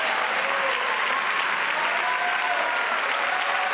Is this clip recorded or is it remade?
recorded